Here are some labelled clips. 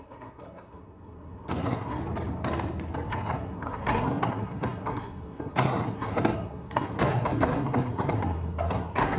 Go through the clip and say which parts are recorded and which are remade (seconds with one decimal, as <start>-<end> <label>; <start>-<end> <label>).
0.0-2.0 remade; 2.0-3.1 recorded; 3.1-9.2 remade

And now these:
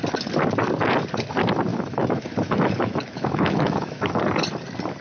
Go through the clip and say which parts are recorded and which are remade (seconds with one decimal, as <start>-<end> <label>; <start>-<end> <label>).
0.0-1.7 recorded; 1.7-4.2 remade; 4.2-5.0 recorded

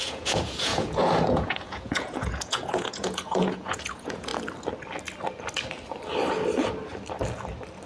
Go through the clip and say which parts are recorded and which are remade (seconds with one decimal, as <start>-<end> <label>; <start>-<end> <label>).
0.0-4.3 remade; 4.3-7.9 recorded

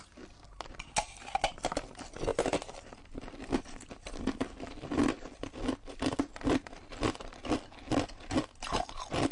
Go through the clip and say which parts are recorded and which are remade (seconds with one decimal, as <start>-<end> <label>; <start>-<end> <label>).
0.0-9.3 recorded

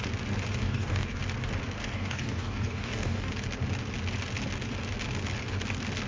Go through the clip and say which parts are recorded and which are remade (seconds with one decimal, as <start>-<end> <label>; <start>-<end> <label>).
0.0-0.6 recorded; 0.6-1.2 remade; 1.2-1.8 recorded; 1.8-3.3 remade; 3.3-6.1 recorded

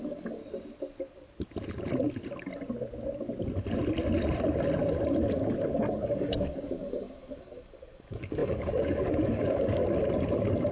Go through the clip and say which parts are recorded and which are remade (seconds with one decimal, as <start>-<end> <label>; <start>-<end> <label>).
0.0-0.4 remade; 0.4-5.3 recorded; 5.3-9.8 remade; 9.8-10.7 recorded